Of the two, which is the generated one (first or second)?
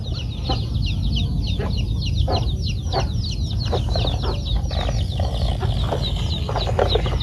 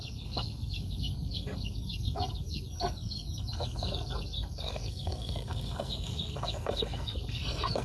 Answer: second